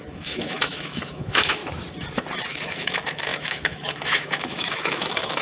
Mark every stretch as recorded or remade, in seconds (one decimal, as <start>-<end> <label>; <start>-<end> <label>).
0.0-1.6 remade; 1.6-2.5 recorded; 2.5-5.4 remade